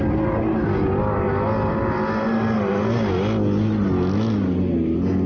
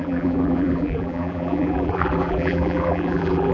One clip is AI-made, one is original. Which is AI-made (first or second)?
second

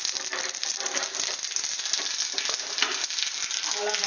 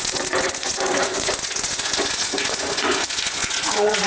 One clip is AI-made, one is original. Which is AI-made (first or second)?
second